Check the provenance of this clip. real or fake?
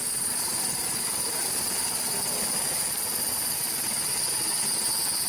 real